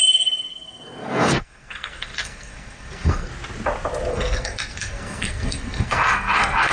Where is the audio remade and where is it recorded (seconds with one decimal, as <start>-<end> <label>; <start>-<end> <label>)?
0.0-3.3 remade; 3.3-4.1 recorded; 4.1-6.7 remade